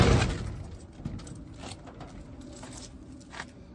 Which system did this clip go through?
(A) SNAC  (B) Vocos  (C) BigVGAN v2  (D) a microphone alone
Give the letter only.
D